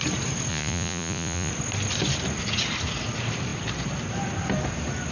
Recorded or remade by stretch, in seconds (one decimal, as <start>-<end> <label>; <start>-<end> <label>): 0.0-0.5 recorded; 0.5-1.5 remade; 1.5-5.1 recorded